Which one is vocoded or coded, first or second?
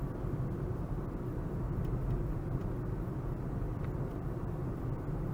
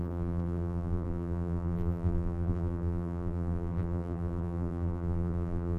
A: second